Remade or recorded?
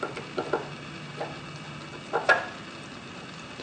recorded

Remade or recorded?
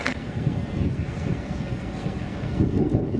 remade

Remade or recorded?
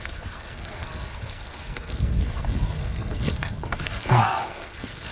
remade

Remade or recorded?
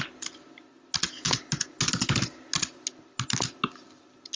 recorded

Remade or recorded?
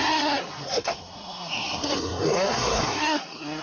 remade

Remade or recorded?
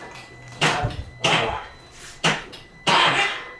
remade